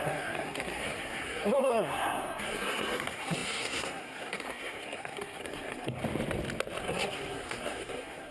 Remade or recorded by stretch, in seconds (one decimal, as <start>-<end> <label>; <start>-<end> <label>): 0.0-6.0 remade; 6.0-6.8 recorded; 6.8-8.3 remade